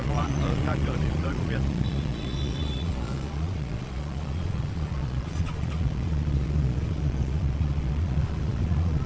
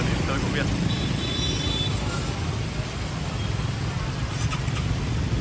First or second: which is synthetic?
first